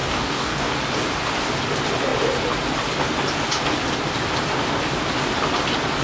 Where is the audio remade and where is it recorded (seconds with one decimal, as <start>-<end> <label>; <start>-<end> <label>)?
0.0-0.7 remade; 0.7-6.0 recorded